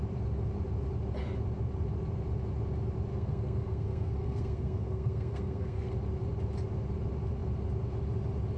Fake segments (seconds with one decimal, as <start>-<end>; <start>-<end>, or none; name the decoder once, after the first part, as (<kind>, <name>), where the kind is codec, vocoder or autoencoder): 3.1-5.9 (codec, SNAC)

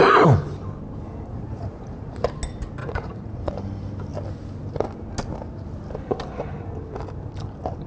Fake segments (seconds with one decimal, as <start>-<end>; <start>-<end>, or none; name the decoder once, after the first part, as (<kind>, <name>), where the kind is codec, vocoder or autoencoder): 1.3-2.3 (vocoder, Vocos); 2.8-3.5

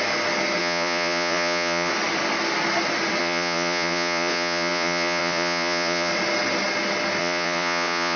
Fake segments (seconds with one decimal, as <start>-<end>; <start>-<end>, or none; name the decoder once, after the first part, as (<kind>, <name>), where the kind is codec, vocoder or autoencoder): 0.6-1.9 (vocoder, Vocos); 3.2-6.1; 7.2-8.2